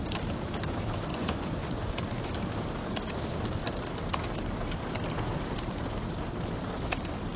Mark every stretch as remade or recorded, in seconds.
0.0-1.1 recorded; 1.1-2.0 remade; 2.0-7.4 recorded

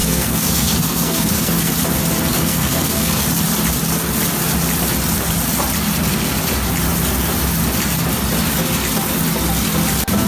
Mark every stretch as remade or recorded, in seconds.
0.0-1.7 remade; 1.7-2.3 recorded; 2.3-3.2 remade; 3.2-10.3 recorded

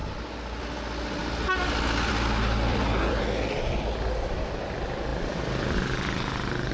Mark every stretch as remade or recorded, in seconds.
0.0-2.7 recorded; 2.7-3.2 remade; 3.2-5.1 recorded; 5.1-6.7 remade

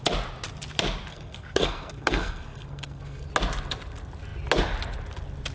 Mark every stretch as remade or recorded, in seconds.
0.0-1.1 recorded; 1.1-3.3 remade; 3.3-5.5 recorded

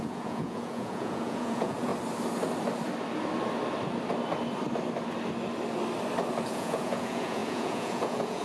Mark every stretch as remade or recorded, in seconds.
0.0-1.9 remade; 1.9-6.5 recorded; 6.5-8.4 remade

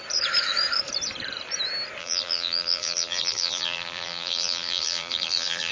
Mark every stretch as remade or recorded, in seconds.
0.0-2.0 recorded; 2.0-5.7 remade

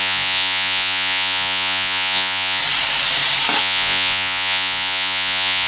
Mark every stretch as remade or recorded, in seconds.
0.0-2.6 remade; 2.6-3.6 recorded; 3.6-5.7 remade